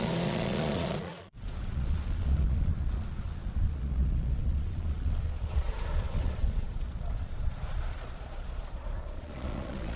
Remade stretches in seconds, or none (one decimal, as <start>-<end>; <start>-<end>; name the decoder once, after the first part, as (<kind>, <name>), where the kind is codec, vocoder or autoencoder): 0.0-10.0 (vocoder, Vocos)